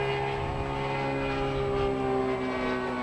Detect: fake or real real